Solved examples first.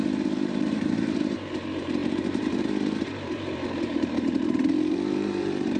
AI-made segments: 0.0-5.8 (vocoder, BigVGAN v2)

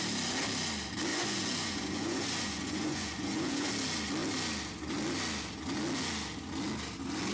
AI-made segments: 1.1-3.7 (vocoder, Vocos)

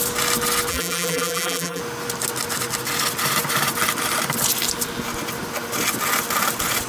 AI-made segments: 0.7-1.8 (vocoder, BigVGAN v2)